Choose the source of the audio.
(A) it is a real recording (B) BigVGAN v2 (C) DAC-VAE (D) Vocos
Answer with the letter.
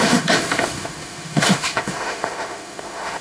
C